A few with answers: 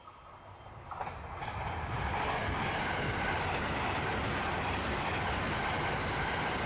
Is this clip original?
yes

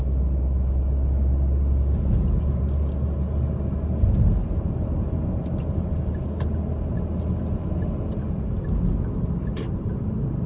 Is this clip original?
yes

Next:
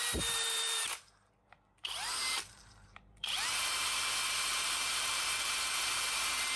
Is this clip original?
no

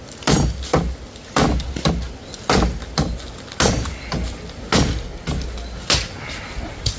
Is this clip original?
yes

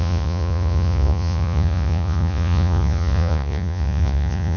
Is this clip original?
no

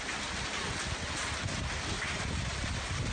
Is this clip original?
yes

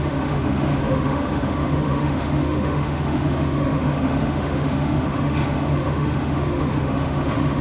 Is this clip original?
no